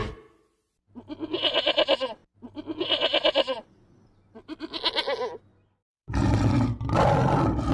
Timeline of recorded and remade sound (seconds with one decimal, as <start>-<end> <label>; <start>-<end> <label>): 0.0-7.7 recorded